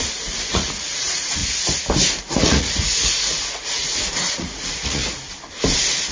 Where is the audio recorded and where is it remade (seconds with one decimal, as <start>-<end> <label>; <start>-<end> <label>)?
0.0-1.4 remade; 1.4-2.2 recorded; 2.2-5.0 remade; 5.0-6.1 recorded